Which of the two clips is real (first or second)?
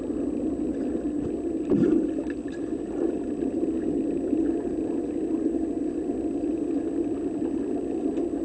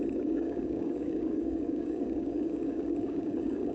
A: first